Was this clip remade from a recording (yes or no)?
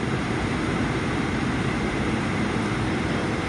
yes